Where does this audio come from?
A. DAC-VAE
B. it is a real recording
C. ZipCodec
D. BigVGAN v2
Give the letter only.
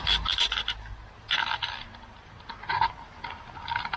B